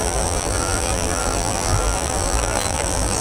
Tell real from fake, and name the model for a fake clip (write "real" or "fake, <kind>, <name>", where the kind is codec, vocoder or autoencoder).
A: fake, vocoder, BigVGAN v2